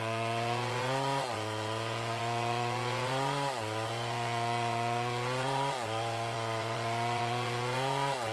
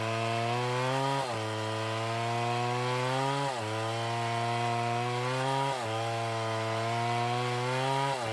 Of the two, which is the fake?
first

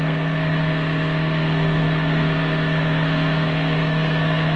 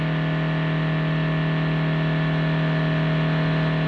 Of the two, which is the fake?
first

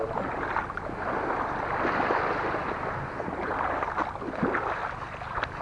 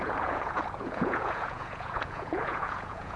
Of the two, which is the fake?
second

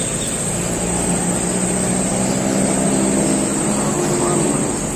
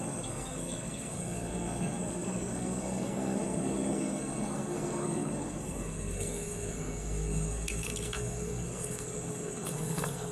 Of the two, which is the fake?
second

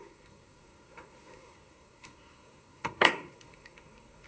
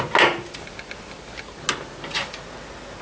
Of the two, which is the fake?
first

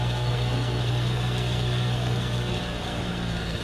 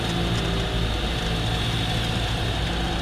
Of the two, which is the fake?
first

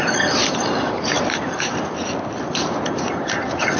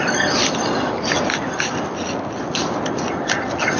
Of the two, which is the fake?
first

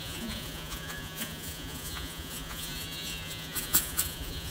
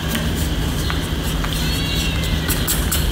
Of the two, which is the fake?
first